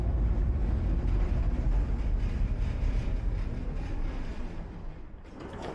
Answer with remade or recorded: recorded